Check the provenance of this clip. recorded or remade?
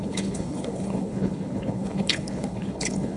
remade